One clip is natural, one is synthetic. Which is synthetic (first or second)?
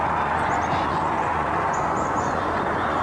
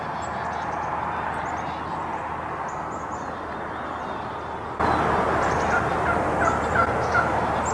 first